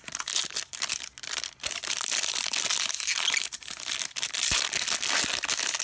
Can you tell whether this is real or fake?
real